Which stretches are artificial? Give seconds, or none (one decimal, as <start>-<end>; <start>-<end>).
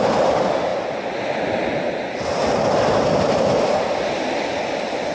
none